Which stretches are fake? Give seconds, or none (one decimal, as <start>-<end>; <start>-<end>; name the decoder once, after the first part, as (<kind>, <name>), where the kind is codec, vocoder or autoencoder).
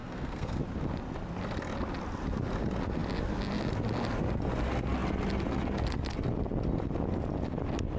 0.0-0.6 (codec, SNAC)